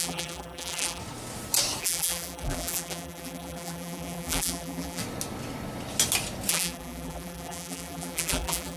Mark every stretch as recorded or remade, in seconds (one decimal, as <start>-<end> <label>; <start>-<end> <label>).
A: 0.0-1.0 remade; 1.0-1.8 recorded; 1.8-5.0 remade; 5.0-6.5 recorded; 6.5-8.8 remade